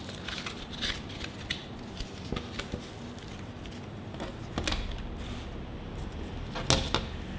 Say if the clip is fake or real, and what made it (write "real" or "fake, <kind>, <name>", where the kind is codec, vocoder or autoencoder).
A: real